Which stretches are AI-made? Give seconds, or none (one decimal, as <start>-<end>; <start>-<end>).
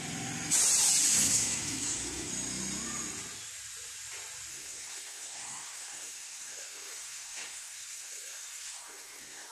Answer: 1.1-2.3; 4.5-9.5